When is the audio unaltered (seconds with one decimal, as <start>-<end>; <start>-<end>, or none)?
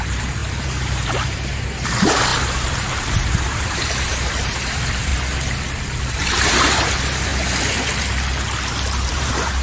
5.1-6.0; 7.3-9.1